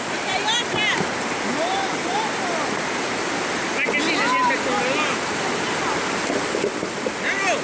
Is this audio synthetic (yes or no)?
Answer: no